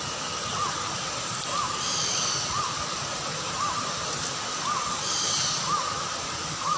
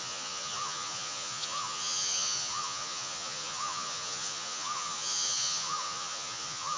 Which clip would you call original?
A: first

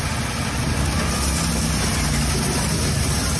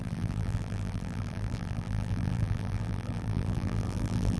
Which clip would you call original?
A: first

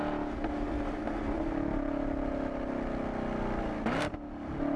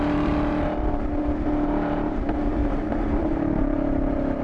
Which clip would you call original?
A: first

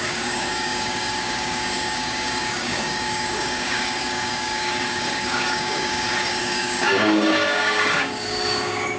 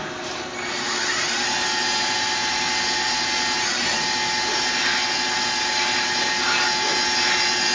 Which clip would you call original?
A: second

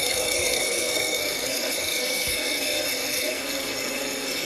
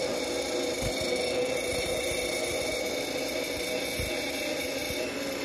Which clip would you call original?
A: second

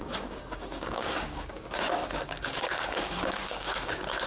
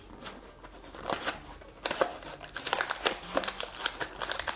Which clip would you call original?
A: second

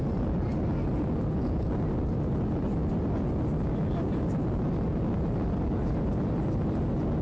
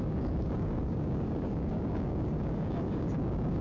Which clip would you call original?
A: first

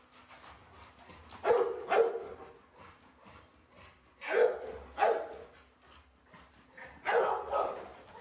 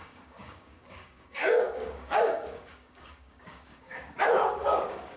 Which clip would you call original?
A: first